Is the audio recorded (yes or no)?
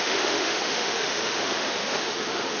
no